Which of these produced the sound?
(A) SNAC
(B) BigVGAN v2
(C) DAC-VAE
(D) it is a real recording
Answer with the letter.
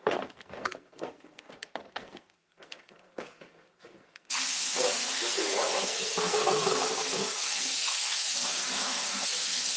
A